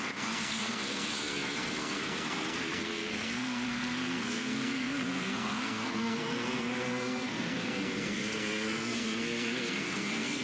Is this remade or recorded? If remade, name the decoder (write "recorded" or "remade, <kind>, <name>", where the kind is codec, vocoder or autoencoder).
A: remade, codec, SNAC